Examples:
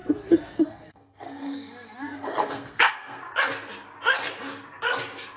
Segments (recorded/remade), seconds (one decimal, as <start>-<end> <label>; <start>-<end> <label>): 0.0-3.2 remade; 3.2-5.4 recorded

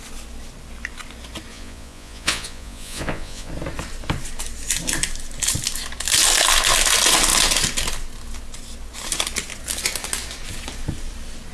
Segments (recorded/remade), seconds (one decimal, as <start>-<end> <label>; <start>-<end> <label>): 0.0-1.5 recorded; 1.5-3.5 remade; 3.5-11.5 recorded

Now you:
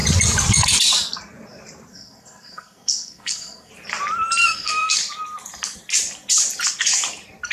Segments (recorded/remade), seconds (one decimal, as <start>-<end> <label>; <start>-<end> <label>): 0.0-1.9 recorded; 1.9-3.7 remade; 3.7-4.4 recorded; 4.4-4.9 remade; 4.9-7.5 recorded